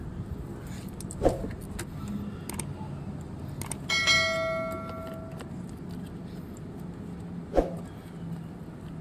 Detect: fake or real real